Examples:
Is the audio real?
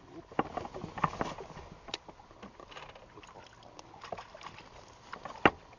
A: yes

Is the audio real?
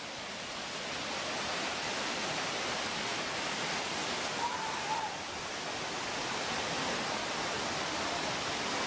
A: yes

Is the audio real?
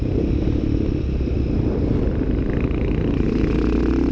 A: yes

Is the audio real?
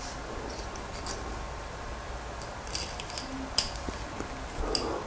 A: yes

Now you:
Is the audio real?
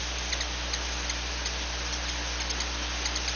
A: yes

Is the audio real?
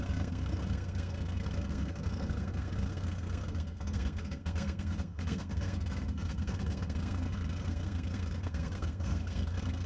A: no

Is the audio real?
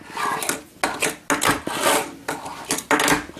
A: yes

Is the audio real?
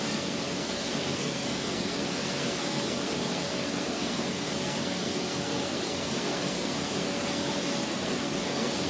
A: no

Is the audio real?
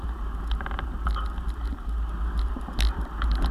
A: yes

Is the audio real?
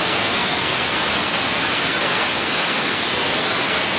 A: no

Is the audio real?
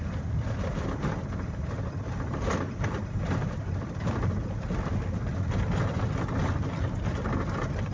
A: yes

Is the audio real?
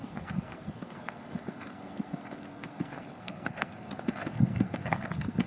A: no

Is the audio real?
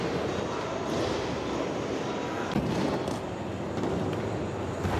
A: yes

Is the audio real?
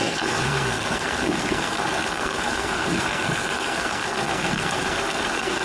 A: no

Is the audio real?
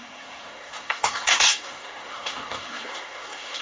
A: no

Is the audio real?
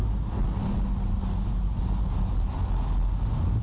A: yes